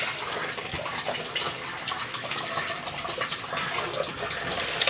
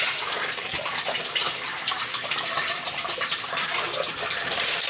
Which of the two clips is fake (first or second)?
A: second